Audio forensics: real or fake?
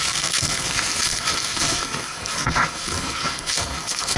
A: fake